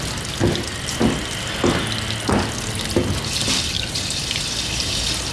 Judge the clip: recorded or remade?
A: recorded